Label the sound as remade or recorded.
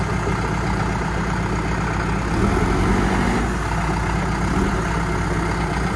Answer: recorded